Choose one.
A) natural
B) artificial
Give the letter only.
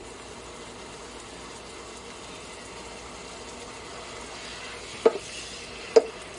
A